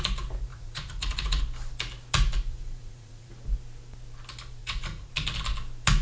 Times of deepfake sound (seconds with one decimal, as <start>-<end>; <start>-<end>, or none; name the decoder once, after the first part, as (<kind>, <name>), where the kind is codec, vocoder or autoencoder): 0.5-1.4 (vocoder, Vocos); 2.5-3.3; 4.6-5.1